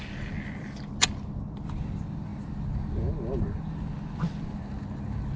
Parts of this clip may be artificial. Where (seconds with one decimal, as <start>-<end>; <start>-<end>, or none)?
none